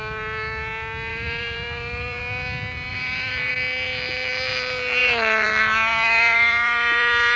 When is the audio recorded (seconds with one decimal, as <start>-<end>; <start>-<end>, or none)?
0.0-1.1; 2.2-2.9; 3.5-5.0; 5.5-5.9